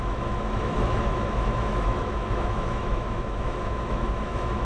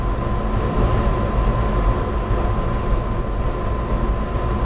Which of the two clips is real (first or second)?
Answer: second